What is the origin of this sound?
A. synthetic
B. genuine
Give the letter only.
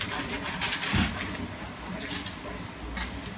B